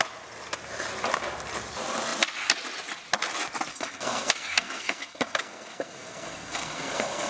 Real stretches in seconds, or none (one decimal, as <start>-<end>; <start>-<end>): 0.0-3.7